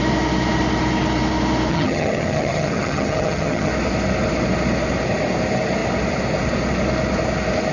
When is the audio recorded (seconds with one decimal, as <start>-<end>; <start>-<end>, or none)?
0.0-1.7; 3.7-7.7